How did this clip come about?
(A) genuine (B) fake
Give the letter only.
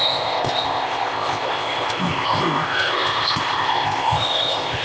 B